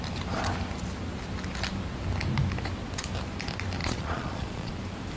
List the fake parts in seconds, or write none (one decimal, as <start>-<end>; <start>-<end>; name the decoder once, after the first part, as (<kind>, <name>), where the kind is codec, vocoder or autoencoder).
3.8-4.7 (vocoder, Vocos)